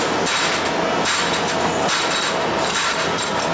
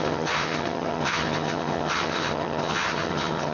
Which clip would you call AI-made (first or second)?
second